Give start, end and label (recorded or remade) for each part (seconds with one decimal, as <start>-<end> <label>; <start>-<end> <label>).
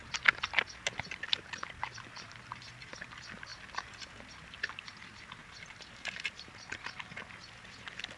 0.0-5.4 recorded; 5.4-7.2 remade; 7.2-8.2 recorded